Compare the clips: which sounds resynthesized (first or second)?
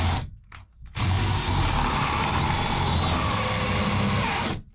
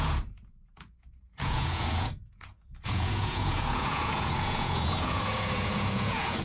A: second